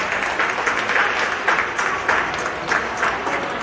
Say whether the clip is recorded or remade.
recorded